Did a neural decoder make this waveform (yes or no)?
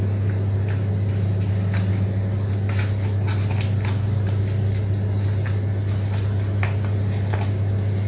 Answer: no